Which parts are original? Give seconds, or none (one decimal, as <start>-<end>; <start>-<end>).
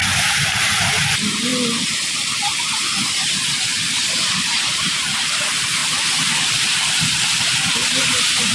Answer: 1.5-4.0